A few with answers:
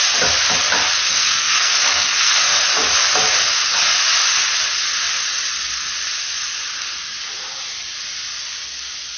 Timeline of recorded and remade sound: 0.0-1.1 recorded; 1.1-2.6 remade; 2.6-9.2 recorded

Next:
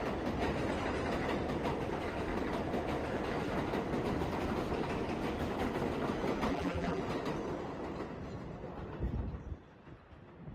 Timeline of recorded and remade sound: 0.0-6.5 recorded; 6.5-7.0 remade; 7.0-10.5 recorded

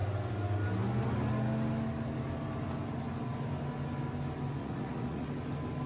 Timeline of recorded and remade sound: 0.0-4.6 recorded; 4.6-5.3 remade; 5.3-5.9 recorded